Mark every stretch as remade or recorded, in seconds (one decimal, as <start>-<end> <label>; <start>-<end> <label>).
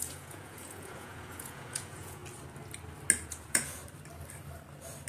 0.0-2.2 remade; 2.2-3.2 recorded; 3.2-3.8 remade; 3.8-5.1 recorded